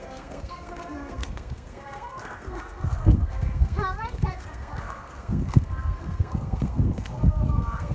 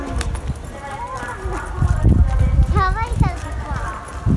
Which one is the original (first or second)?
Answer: second